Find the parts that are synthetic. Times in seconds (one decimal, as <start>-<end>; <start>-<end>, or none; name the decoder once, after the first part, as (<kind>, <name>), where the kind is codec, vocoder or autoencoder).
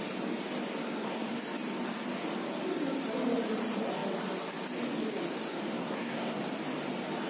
0.8-1.4 (codec, SNAC); 5.5-6.4